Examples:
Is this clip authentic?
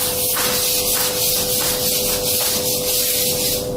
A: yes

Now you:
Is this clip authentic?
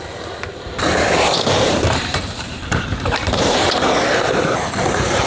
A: no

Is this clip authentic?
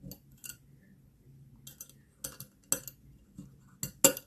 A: yes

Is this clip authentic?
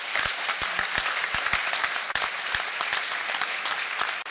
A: no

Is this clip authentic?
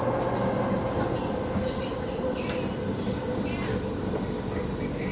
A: yes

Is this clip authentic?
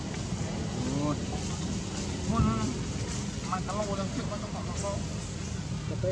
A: yes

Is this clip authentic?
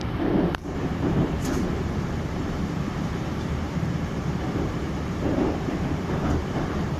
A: no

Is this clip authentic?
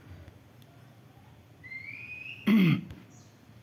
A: yes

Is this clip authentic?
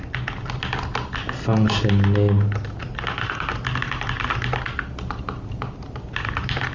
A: yes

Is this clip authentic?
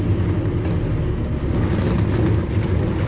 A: yes